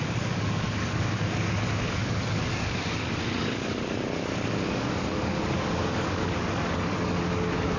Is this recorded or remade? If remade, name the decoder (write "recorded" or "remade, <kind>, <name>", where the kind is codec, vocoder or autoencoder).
remade, codec, DAC